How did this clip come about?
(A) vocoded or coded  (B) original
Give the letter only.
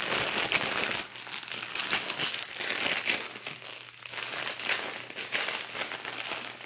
B